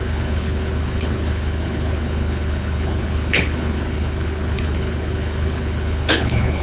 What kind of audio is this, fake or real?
fake